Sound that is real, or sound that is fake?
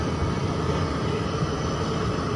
real